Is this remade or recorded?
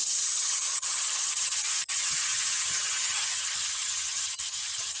remade